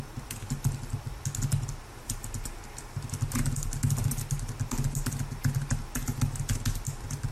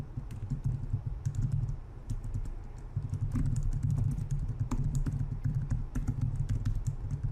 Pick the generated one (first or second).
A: second